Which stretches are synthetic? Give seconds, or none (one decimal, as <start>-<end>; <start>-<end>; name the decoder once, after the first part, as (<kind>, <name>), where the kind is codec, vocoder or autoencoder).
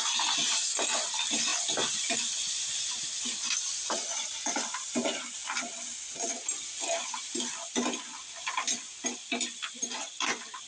none